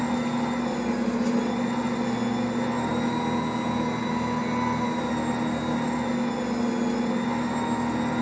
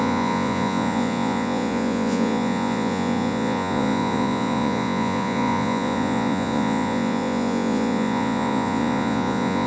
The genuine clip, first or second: first